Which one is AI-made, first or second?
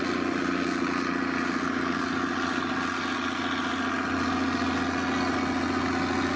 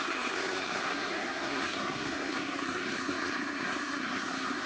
second